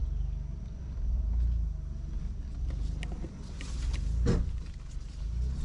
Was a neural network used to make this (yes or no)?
no